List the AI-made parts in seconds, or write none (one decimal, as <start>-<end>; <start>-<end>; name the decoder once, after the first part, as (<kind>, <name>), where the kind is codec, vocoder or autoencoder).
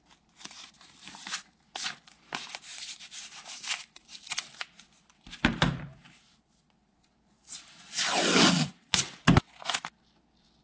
2.7-4.5 (vocoder, BigVGAN v2); 5.7-6.9